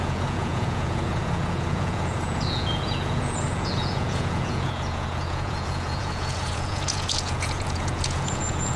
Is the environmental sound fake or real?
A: fake